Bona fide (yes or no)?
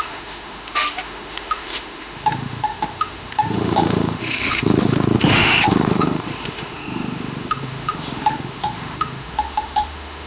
no